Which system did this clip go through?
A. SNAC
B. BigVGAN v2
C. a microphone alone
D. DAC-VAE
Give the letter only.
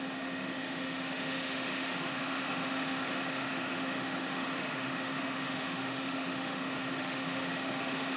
D